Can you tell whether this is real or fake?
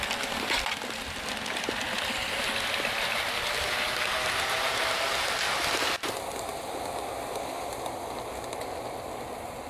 real